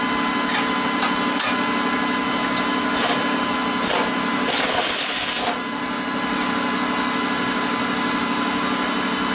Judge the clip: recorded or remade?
recorded